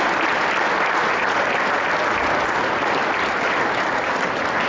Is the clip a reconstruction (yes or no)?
no